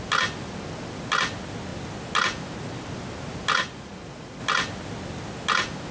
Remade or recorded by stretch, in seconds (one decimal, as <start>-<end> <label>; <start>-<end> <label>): 0.0-3.6 recorded; 3.6-4.4 remade; 4.4-5.9 recorded